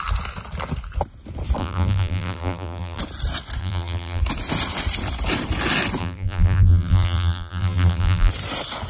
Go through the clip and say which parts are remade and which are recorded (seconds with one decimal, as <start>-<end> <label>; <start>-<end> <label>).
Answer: 0.0-1.6 recorded; 1.6-3.0 remade; 3.0-3.6 recorded; 3.6-4.2 remade; 4.2-6.0 recorded; 6.0-8.3 remade; 8.3-8.9 recorded